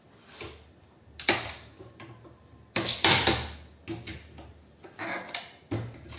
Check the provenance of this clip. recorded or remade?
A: recorded